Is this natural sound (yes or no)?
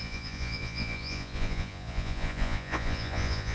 no